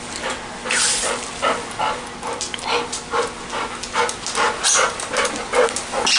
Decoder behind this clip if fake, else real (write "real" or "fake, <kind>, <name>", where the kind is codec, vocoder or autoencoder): real